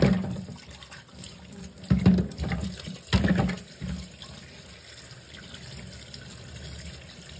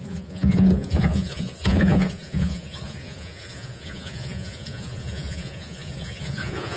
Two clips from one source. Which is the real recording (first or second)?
first